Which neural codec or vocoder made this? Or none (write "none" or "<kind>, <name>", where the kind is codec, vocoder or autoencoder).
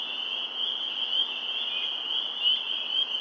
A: none